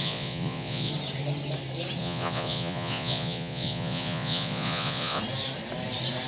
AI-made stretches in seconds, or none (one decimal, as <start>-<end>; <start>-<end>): 0.0-0.9; 2.0-5.2